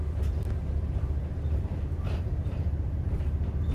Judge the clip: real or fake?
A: fake